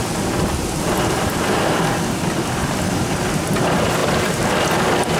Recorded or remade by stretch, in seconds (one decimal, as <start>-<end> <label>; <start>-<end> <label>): 0.0-5.2 recorded